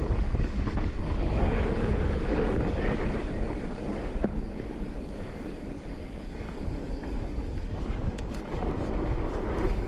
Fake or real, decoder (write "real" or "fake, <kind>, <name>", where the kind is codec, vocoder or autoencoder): fake, codec, DAC